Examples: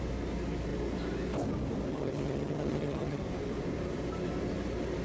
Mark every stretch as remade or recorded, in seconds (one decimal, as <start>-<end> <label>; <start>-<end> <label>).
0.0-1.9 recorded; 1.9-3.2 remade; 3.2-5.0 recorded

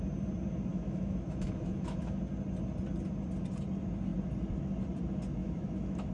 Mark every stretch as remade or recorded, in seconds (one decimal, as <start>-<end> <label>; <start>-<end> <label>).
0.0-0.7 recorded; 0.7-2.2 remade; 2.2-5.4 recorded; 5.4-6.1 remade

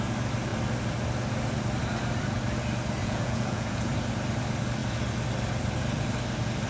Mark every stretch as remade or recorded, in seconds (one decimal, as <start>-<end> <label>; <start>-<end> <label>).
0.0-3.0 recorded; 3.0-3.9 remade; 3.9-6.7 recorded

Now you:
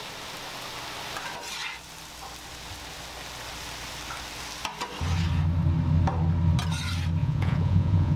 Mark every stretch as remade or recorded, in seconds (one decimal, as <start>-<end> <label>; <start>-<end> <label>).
0.0-7.2 recorded; 7.2-8.2 remade

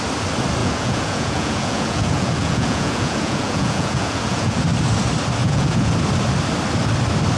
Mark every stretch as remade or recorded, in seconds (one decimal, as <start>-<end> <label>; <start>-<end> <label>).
0.0-0.6 recorded; 0.6-4.6 remade; 4.6-5.4 recorded; 5.4-5.9 remade; 5.9-7.4 recorded

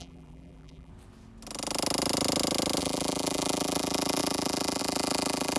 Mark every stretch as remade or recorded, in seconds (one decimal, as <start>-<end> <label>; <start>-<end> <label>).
0.0-0.9 remade; 0.9-2.8 recorded; 2.8-5.6 remade

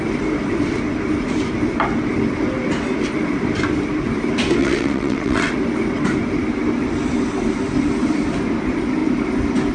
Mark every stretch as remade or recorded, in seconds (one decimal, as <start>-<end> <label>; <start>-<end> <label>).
0.0-4.6 recorded; 4.6-5.5 remade; 5.5-9.7 recorded

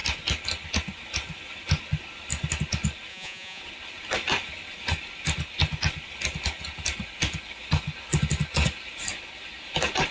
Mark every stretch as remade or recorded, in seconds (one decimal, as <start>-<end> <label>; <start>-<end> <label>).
0.0-3.1 recorded; 3.1-3.6 remade; 3.6-10.1 recorded